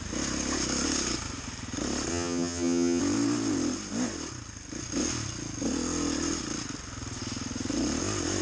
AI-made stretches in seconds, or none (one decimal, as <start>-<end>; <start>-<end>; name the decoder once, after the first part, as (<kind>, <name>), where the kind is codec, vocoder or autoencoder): 2.1-3.0 (vocoder, HiFi-GAN)